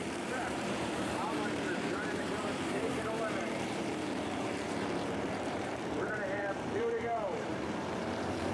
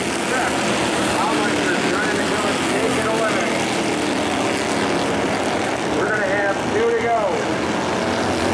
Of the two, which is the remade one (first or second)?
first